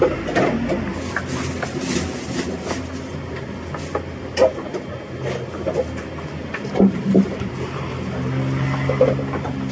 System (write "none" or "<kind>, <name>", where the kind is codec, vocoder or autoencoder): none